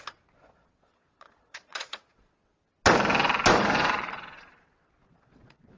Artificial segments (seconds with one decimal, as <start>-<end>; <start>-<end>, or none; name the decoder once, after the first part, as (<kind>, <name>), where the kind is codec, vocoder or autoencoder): 0.0-2.5 (vocoder, Vocos); 3.9-5.8